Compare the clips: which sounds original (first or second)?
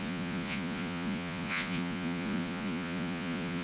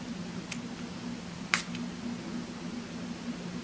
second